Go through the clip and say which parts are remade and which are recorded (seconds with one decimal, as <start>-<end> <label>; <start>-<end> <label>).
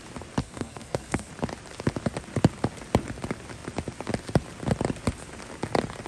0.0-0.4 recorded; 0.4-1.3 remade; 1.3-6.1 recorded